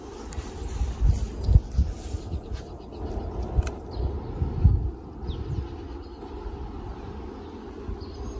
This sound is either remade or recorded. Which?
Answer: recorded